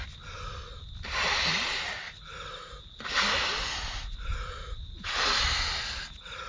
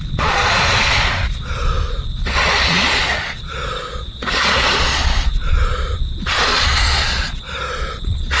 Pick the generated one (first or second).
second